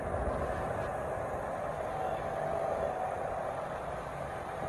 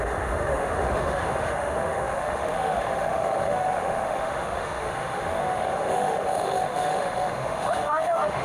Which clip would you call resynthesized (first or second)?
second